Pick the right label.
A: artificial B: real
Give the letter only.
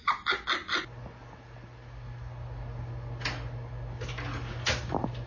B